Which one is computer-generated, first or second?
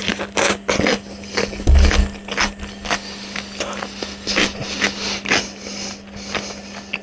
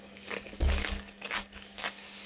second